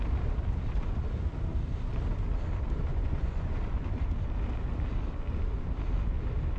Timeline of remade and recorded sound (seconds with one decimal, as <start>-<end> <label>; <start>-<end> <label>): 0.0-2.9 recorded; 2.9-3.5 remade; 3.5-6.6 recorded